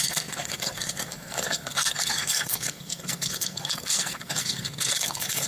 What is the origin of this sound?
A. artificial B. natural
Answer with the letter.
A